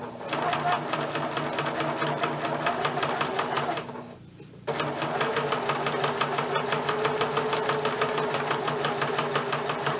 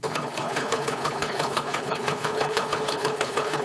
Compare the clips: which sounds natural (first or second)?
first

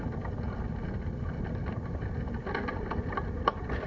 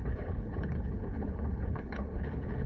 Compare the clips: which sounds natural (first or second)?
first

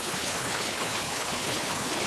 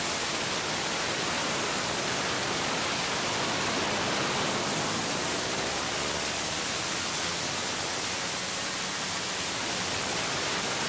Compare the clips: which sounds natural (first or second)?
second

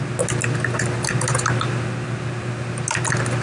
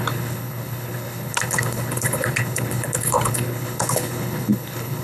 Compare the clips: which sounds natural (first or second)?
first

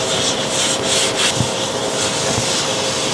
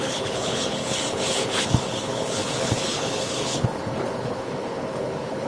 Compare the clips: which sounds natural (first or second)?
first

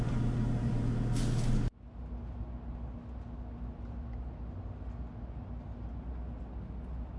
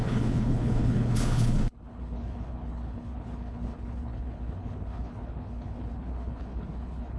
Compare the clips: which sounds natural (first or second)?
first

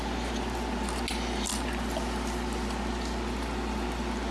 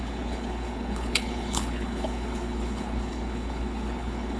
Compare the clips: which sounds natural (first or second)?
first